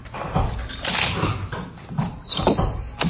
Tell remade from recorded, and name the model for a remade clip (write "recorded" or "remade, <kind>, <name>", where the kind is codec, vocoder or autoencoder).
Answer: recorded